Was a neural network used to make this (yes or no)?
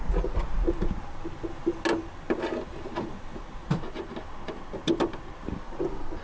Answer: no